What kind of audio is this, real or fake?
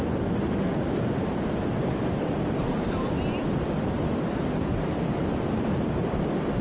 real